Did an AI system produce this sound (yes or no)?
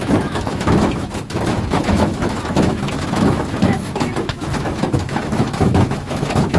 yes